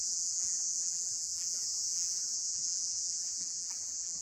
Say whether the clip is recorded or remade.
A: remade